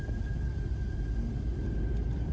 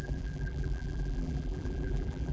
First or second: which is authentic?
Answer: first